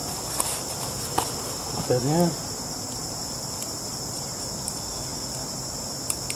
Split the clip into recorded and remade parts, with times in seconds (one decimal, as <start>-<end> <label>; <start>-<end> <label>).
0.0-0.8 remade; 0.8-3.0 recorded; 3.0-4.2 remade; 4.2-6.4 recorded